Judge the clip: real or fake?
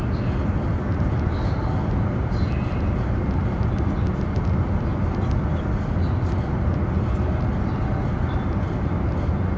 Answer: real